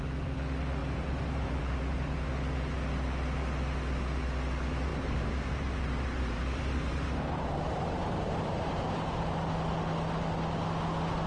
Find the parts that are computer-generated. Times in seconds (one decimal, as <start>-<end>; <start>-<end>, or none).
0.8-2.3; 4.9-9.2